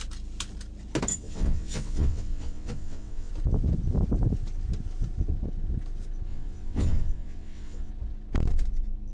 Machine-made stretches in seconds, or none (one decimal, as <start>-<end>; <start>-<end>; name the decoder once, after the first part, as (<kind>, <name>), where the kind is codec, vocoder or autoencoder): 1.1-3.3 (vocoder, WaveNeXt); 6.3-7.9